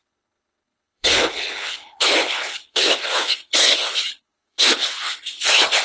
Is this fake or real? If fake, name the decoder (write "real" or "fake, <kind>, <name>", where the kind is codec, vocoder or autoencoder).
fake, codec, HILCodec